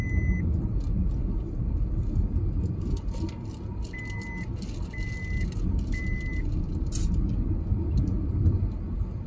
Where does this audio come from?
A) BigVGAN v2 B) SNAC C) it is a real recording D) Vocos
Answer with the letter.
C